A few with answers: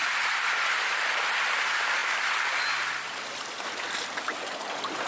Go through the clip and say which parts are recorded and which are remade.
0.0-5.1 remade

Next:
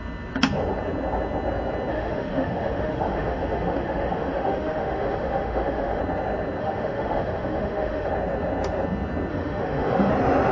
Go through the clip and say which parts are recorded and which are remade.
0.0-1.9 recorded; 1.9-6.0 remade; 6.0-6.6 recorded; 6.6-8.1 remade; 8.1-9.3 recorded; 9.3-10.1 remade; 10.1-10.5 recorded

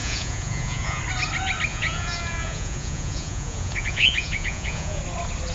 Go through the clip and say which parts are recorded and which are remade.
0.0-1.0 remade; 1.0-1.7 recorded; 1.7-5.0 remade; 5.0-5.5 recorded